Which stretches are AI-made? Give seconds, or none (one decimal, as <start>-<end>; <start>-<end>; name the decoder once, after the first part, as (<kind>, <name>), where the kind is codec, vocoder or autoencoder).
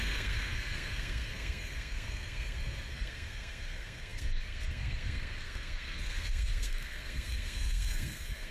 0.0-8.5 (codec, SNAC)